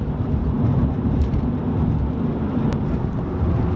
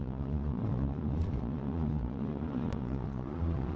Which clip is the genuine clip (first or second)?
first